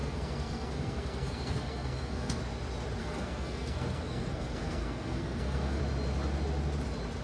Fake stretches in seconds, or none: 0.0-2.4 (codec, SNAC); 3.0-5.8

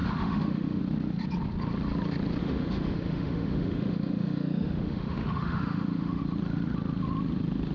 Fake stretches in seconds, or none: 0.0-0.8 (autoencoder, DAC-VAE); 2.4-6.2

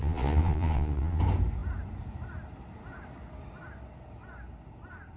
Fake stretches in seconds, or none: 0.0-1.2 (vocoder, Vocos)

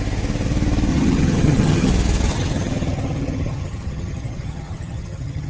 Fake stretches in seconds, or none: 0.9-1.9 (vocoder, HiFi-GAN); 2.3-5.5

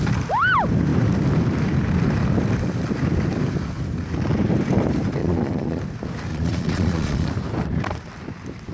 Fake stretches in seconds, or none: 5.2-5.8 (vocoder, Vocos); 6.3-7.3

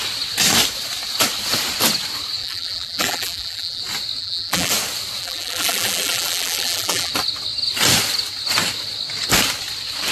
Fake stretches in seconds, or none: 2.4-3.8 (vocoder, BigVGAN v2); 4.2-4.7; 5.2-7.1